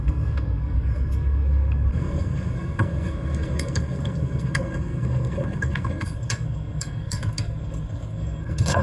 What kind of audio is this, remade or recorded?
remade